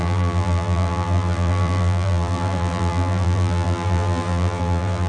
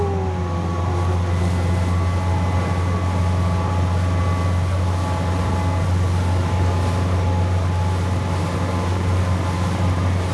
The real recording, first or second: second